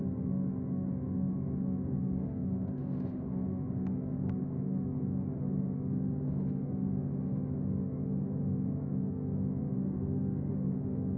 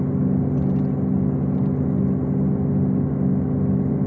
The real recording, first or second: second